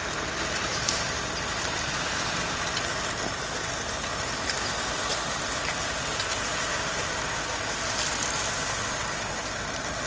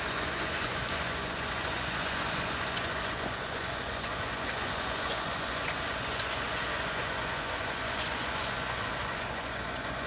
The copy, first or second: second